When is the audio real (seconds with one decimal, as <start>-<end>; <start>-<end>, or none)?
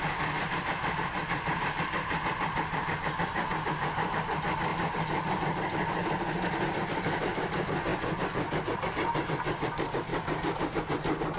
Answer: 0.0-11.4